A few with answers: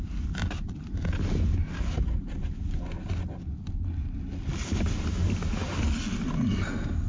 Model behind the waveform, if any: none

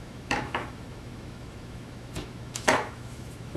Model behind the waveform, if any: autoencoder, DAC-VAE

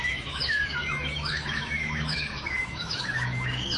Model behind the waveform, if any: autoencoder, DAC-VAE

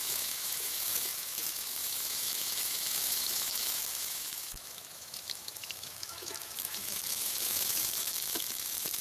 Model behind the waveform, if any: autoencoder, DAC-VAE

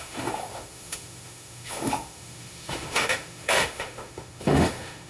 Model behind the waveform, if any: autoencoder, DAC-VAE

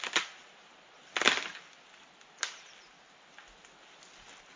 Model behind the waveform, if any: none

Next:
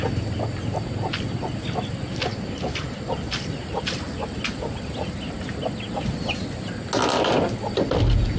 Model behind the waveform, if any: none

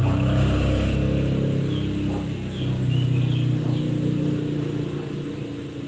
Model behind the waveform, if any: none